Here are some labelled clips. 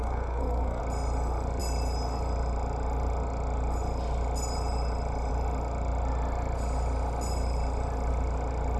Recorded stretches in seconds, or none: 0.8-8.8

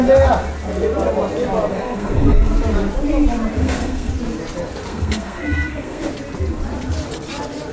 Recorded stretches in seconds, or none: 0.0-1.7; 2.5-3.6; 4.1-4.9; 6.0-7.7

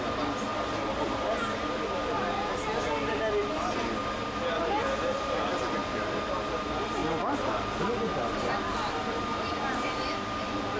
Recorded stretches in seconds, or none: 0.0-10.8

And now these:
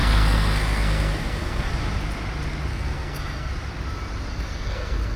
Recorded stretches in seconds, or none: 1.7-2.7; 3.5-4.3

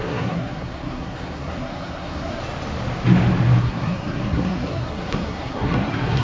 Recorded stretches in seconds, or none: 2.4-3.6

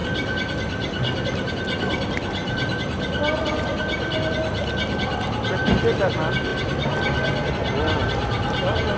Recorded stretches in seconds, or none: 0.0-9.0